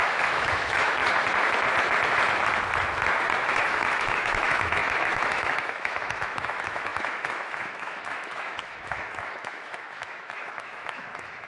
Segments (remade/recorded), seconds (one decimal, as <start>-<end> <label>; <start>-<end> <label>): 0.0-1.0 remade; 1.0-3.5 recorded; 3.5-11.5 remade